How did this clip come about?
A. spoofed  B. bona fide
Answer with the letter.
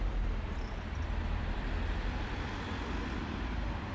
A